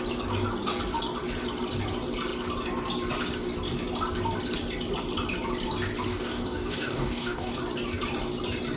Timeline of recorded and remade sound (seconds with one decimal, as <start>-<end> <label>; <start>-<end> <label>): 0.0-6.1 recorded; 6.1-7.5 remade; 7.5-8.8 recorded